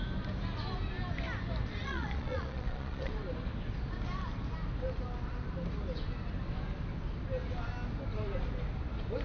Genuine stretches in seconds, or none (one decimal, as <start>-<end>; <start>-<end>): 0.0-1.8; 3.1-9.2